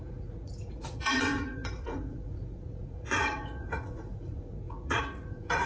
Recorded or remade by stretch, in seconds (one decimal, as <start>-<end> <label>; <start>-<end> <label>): 0.0-5.7 remade